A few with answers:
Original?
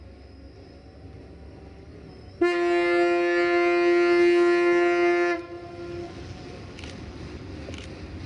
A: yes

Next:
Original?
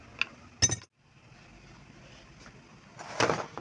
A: yes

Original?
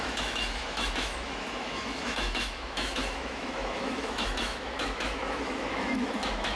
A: no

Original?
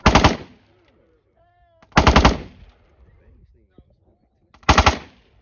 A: yes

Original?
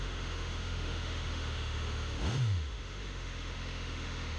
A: no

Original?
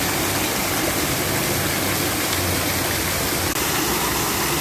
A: yes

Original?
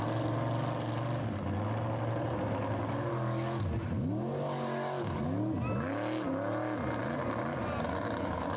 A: yes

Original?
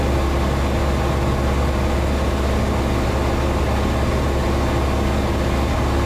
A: yes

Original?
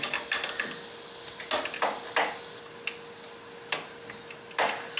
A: yes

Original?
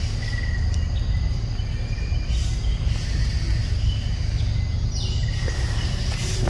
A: yes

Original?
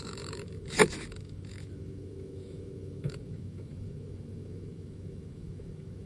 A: no